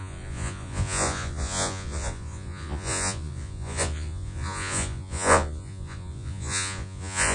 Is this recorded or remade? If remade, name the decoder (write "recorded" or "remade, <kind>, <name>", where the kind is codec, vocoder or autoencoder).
remade, vocoder, Vocos